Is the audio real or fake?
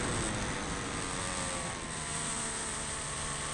fake